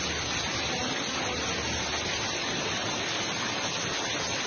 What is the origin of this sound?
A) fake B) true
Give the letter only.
B